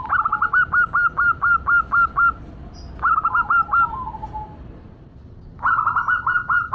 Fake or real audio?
real